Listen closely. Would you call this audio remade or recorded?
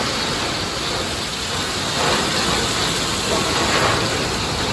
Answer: recorded